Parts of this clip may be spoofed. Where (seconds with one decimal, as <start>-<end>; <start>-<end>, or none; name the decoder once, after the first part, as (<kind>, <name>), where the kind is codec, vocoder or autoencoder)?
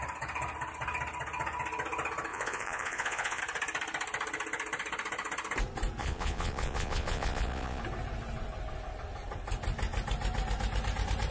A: 2.3-3.4 (vocoder, Vocos); 6.0-7.8